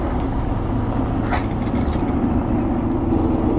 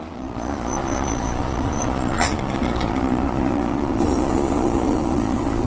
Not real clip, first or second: second